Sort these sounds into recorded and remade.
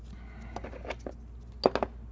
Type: recorded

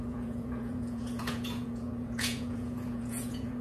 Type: remade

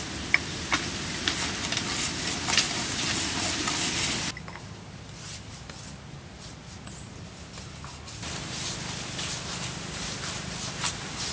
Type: recorded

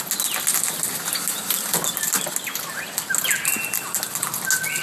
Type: recorded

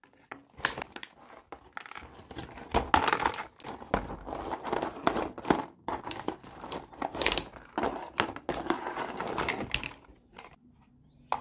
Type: recorded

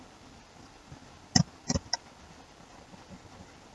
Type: recorded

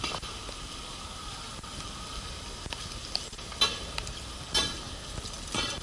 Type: recorded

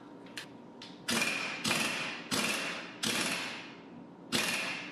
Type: recorded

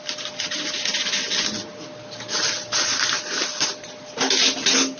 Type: recorded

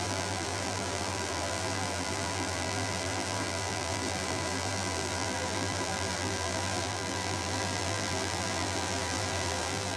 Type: remade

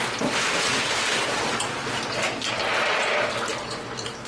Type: recorded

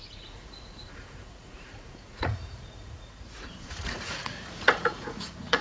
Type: remade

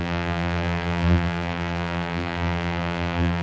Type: remade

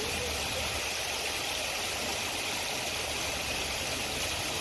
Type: remade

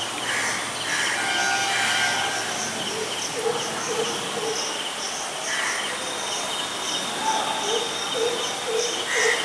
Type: recorded